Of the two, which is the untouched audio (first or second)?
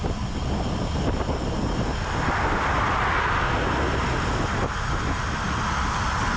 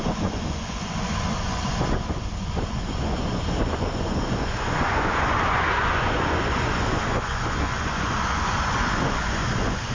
first